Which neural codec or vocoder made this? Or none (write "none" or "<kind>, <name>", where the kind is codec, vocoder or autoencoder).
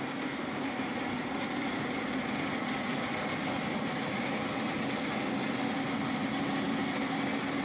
none